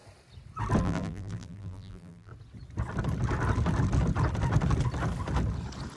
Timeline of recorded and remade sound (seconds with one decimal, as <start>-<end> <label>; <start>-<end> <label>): 0.0-0.8 recorded; 0.8-2.3 remade; 2.3-6.0 recorded